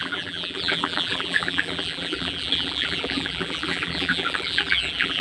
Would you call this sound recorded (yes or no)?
no